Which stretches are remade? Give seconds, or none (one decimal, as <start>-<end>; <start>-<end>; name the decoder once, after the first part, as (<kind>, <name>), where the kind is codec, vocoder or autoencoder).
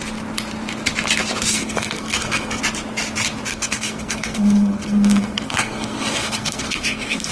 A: 1.5-2.6 (codec, SNAC); 3.5-7.3